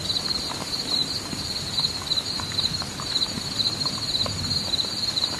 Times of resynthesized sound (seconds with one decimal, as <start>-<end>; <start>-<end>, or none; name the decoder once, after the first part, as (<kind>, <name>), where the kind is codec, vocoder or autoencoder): none